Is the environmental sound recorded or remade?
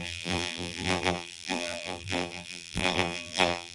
remade